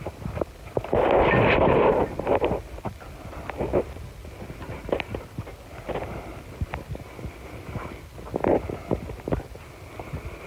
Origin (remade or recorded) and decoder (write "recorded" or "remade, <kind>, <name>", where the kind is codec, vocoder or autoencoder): recorded